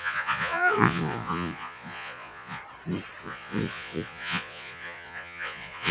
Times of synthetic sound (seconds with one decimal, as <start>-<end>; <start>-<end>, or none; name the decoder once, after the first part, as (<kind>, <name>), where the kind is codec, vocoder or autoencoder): 0.0-2.6 (vocoder, Vocos); 3.2-5.9